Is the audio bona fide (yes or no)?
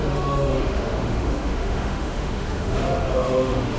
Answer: no